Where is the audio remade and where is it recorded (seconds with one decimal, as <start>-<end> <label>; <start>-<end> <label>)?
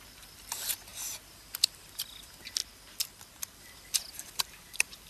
0.0-0.9 remade; 0.9-1.6 recorded; 1.6-2.6 remade; 2.6-3.6 recorded; 3.6-5.1 remade